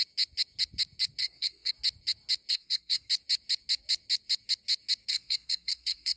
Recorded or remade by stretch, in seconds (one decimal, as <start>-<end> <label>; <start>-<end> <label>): 0.0-1.2 recorded; 1.2-1.7 remade; 1.7-2.5 recorded; 2.5-3.1 remade; 3.1-5.1 recorded; 5.1-6.2 remade